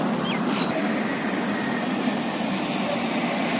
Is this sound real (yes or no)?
yes